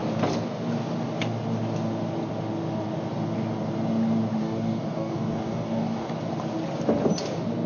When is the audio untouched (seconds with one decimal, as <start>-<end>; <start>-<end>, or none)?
0.0-4.4; 6.1-7.7